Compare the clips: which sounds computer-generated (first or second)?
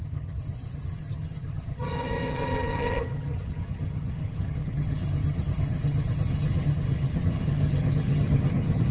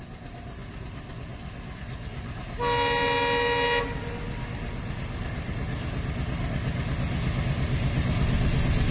first